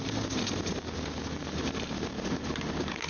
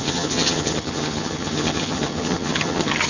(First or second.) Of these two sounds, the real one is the first